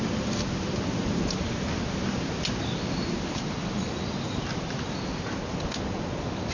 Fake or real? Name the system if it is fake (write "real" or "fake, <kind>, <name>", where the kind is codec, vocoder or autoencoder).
real